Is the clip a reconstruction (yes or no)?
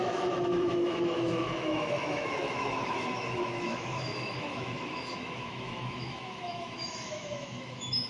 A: yes